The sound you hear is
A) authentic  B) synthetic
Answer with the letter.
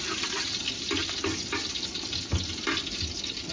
A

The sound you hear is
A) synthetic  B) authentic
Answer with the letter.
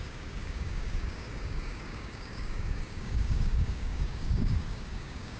A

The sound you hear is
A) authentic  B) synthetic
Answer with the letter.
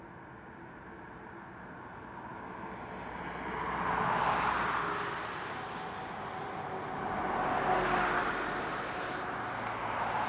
A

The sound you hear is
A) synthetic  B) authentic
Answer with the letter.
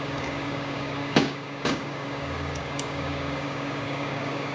A